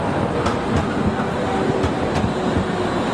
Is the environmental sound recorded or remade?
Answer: recorded